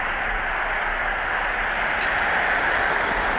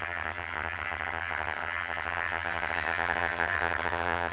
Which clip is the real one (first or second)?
first